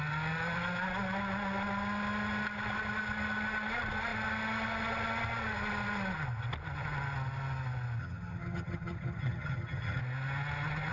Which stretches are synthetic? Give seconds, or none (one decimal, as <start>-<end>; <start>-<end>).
8.0-10.0